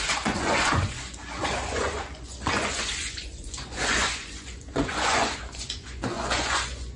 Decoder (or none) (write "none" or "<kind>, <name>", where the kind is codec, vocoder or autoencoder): vocoder, Vocos